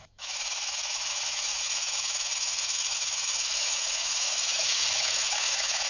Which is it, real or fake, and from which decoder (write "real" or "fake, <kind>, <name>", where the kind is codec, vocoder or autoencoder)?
fake, autoencoder, DAC-VAE